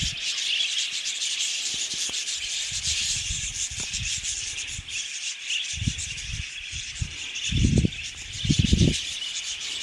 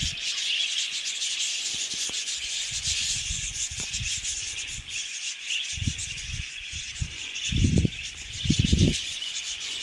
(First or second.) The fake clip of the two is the second